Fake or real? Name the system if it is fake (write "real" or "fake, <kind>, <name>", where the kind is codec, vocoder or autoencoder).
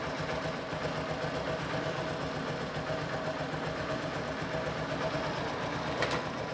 real